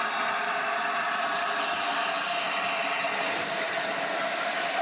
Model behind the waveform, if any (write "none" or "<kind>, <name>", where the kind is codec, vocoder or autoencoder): none